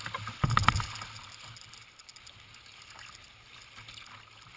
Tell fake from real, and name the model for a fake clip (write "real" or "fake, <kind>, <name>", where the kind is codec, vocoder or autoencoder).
real